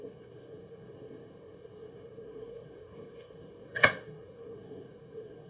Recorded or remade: remade